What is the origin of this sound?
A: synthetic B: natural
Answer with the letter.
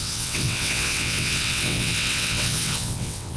A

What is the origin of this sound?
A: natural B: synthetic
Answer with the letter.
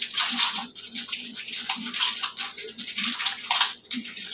B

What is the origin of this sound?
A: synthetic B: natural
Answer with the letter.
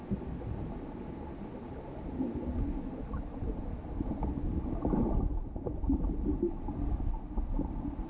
B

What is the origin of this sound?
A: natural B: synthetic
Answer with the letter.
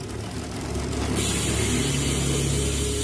A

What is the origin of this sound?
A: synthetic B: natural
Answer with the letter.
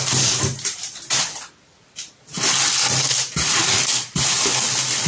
B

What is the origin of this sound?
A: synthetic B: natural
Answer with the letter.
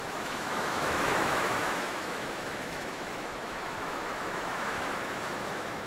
A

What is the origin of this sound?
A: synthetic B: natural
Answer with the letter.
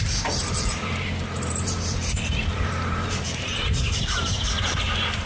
A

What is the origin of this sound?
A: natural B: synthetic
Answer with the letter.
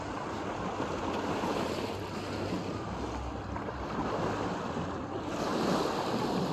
A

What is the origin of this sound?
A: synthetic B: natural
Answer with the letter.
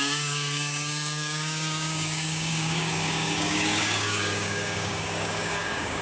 A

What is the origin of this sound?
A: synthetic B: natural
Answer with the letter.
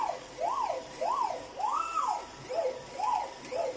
B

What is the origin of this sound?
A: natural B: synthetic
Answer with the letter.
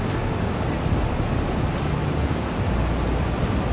A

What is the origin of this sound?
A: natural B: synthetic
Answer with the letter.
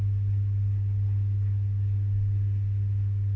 A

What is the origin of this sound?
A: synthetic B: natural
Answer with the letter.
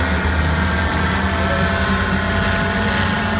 B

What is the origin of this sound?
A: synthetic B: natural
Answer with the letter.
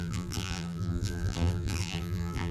A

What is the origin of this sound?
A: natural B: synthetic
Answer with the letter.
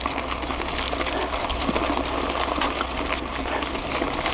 A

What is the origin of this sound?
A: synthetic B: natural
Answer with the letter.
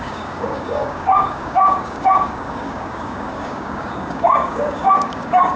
A